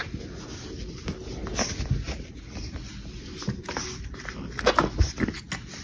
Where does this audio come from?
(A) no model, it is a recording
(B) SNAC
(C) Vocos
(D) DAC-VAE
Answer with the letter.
A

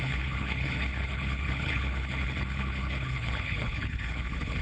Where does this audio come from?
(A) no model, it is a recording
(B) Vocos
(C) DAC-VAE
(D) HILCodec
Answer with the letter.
D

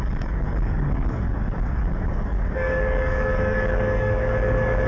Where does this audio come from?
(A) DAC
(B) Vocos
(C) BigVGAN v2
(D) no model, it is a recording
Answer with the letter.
A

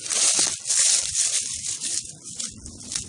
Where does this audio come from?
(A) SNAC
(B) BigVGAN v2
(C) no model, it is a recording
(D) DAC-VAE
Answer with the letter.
C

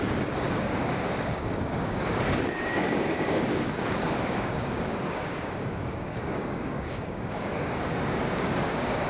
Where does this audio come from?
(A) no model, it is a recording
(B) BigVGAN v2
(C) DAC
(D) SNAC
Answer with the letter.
C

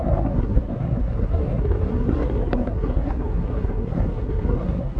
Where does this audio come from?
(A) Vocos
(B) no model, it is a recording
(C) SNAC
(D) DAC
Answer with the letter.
C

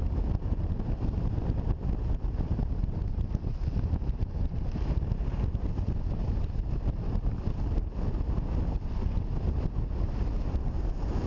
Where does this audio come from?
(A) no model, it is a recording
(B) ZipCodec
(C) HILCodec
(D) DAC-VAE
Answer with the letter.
A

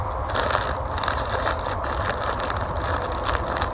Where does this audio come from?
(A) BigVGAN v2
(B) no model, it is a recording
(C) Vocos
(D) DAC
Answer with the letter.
B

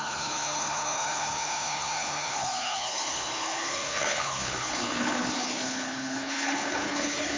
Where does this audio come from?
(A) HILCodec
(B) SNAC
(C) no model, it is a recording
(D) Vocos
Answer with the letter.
A